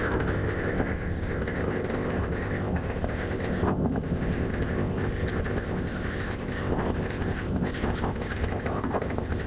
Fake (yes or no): yes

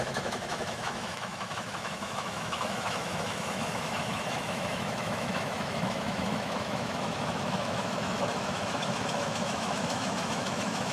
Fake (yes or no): yes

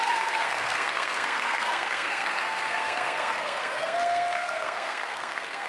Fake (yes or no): yes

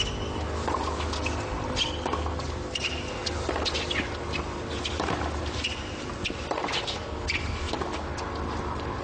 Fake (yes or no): no